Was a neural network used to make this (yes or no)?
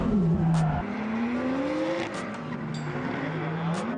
no